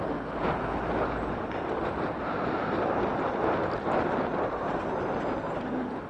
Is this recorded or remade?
recorded